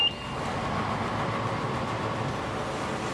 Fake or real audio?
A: real